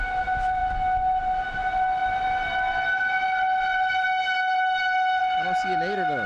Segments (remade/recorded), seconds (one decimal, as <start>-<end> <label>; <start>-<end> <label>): 0.0-6.3 recorded